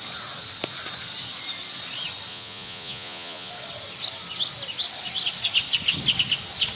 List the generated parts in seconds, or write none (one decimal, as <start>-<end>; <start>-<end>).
2.3-3.5